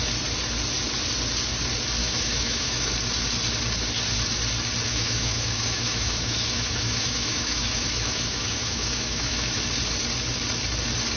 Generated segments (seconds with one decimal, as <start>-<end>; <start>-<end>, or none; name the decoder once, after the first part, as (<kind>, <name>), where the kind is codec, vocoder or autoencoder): 2.0-2.9 (autoencoder, DAC-VAE); 4.9-9.6